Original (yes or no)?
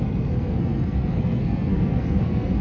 no